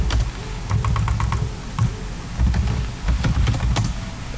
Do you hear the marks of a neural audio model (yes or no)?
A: no